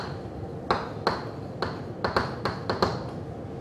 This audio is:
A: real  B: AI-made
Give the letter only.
A